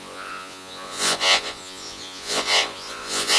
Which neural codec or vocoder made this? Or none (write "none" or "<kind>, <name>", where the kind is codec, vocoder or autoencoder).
vocoder, Vocos